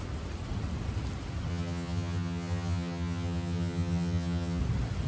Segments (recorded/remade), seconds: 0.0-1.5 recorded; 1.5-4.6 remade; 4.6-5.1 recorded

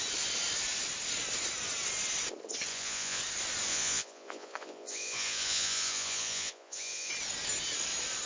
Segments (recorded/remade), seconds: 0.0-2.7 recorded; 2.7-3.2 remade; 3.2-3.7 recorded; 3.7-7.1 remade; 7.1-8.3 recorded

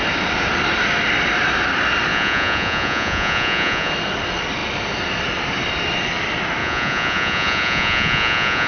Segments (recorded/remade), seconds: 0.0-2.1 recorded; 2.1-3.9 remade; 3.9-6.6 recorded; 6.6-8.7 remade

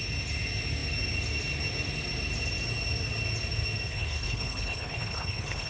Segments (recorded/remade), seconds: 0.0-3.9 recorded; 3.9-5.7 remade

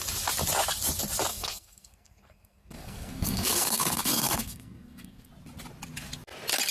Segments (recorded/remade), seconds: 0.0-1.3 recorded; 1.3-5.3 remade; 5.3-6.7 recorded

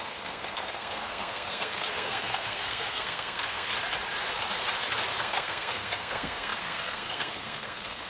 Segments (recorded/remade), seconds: 0.0-3.7 remade; 3.7-5.2 recorded; 5.2-8.1 remade

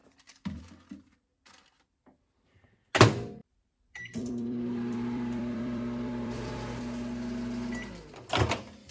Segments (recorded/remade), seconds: 0.0-0.6 remade; 0.6-3.4 recorded; 3.4-6.8 remade; 6.8-8.9 recorded